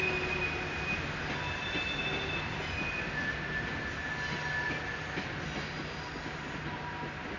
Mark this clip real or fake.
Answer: real